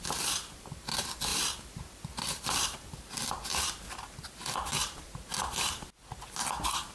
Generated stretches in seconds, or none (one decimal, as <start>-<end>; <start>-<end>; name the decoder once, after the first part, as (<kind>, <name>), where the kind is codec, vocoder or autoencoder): 1.3-3.3 (vocoder, BigVGAN v2)